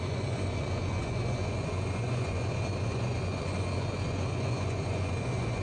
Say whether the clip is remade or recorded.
remade